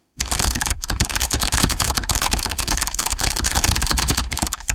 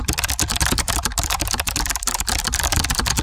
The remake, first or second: first